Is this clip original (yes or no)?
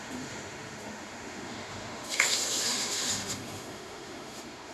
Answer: no